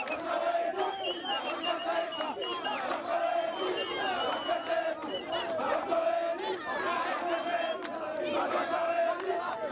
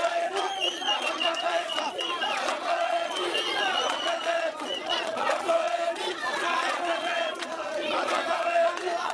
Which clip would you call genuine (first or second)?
first